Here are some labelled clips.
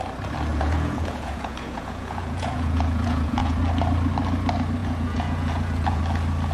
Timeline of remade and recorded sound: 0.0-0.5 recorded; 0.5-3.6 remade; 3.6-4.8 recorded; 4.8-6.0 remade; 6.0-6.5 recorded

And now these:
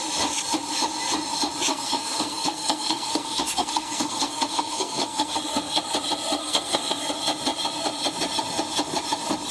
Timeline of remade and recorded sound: 0.0-1.7 recorded; 1.7-5.8 remade; 5.8-6.4 recorded; 6.4-7.1 remade; 7.1-9.5 recorded

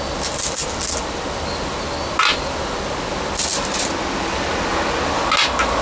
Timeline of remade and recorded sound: 0.0-5.8 recorded

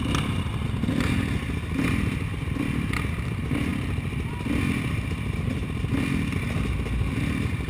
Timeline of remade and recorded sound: 0.0-7.7 recorded